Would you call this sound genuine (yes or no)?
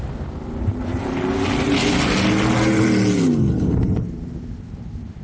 yes